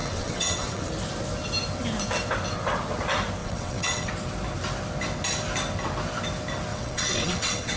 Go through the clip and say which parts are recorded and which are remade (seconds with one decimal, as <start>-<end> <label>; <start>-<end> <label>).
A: 0.0-0.9 remade; 0.9-3.4 recorded; 3.4-4.1 remade; 4.1-6.7 recorded; 6.7-7.8 remade